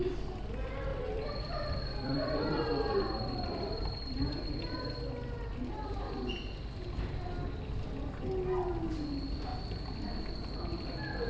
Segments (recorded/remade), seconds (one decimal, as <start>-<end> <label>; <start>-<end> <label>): 0.0-0.9 recorded; 0.9-4.5 remade; 4.5-9.5 recorded; 9.5-10.1 remade; 10.1-11.3 recorded